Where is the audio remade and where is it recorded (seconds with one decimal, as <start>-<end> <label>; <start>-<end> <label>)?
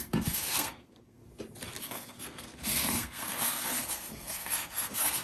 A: 0.0-1.2 remade; 1.2-1.8 recorded; 1.8-5.2 remade